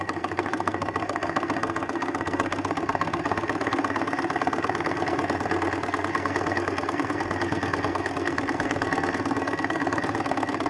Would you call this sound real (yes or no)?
no